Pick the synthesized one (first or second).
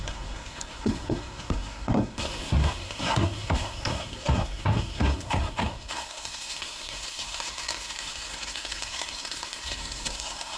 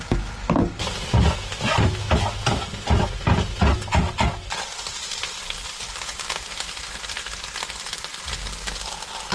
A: first